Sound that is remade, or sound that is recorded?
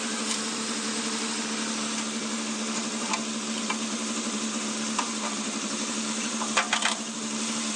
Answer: remade